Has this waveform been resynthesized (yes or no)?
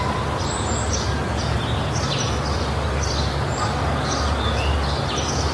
no